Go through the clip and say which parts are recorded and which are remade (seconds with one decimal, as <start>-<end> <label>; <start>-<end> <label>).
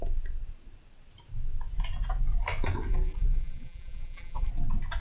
0.0-2.9 recorded; 2.9-4.5 remade; 4.5-5.0 recorded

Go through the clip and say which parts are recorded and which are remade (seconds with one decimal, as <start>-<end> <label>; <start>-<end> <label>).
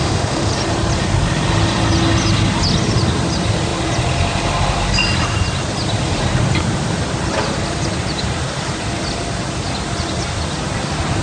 0.0-0.5 remade; 0.5-11.2 recorded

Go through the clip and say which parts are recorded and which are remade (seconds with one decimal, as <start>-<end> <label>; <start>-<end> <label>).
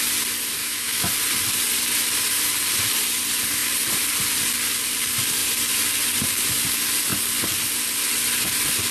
0.0-0.6 recorded; 0.6-1.1 remade; 1.1-8.9 recorded